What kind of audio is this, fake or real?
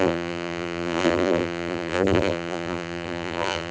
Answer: fake